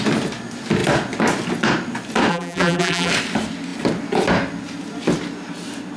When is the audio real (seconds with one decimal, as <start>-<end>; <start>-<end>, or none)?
0.0-2.3; 3.1-6.0